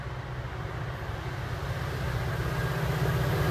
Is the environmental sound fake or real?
real